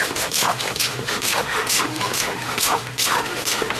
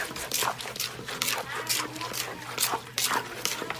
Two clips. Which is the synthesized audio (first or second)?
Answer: first